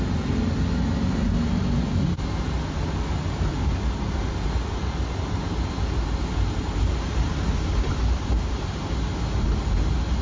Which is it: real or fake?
real